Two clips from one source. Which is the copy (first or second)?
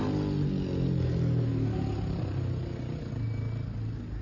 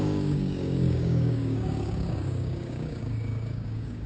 second